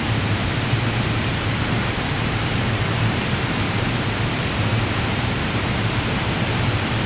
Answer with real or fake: fake